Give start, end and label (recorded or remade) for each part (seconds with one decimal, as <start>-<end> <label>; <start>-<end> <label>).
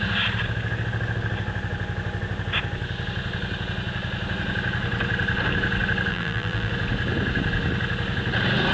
0.0-6.1 recorded; 6.1-6.7 remade; 6.7-8.7 recorded